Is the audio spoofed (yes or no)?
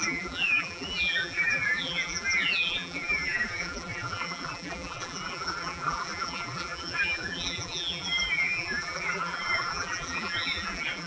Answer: yes